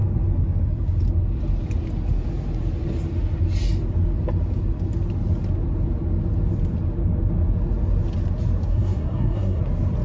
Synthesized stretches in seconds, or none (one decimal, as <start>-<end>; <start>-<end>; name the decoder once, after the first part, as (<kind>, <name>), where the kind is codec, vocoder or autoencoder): 8.7-9.6 (codec, SNAC)